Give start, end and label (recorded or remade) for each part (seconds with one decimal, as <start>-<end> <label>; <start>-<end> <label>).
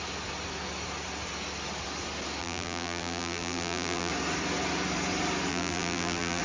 0.0-2.4 recorded; 2.4-4.1 remade; 4.1-5.5 recorded; 5.5-6.4 remade